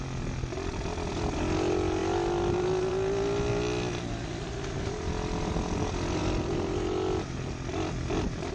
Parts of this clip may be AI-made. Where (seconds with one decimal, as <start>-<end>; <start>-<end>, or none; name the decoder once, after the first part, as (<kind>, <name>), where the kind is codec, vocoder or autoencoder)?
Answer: none